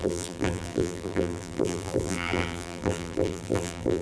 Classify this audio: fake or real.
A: fake